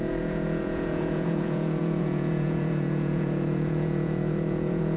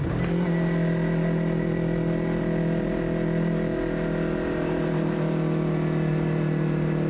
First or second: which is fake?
first